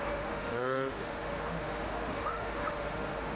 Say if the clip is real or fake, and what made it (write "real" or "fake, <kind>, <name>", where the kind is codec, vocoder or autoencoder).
fake, autoencoder, DAC-VAE